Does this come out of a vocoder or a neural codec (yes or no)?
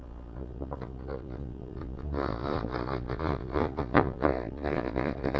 yes